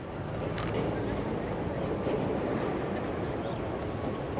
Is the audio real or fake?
real